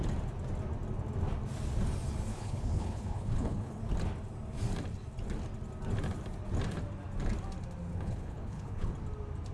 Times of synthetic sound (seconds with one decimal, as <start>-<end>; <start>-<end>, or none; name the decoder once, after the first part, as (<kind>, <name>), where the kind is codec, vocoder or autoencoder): 2.3-3.8 (codec, HILCodec); 7.9-8.9